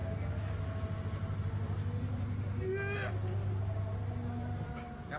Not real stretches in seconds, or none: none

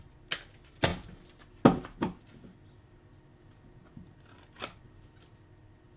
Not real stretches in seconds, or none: none